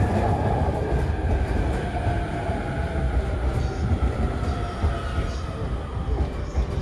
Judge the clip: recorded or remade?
recorded